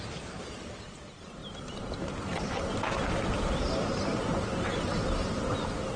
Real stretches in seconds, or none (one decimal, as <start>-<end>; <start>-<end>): 0.0-6.0